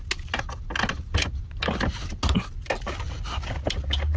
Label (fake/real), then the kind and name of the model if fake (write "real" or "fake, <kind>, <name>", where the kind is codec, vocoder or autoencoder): real